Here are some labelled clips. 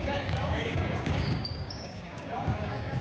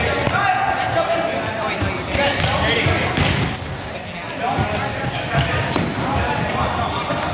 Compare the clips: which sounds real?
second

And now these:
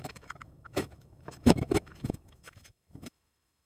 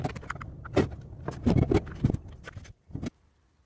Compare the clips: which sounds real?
second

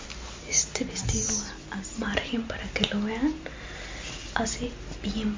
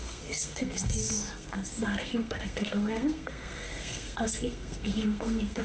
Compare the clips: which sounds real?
first